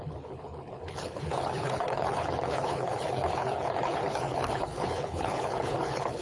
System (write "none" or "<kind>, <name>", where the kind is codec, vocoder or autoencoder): codec, HILCodec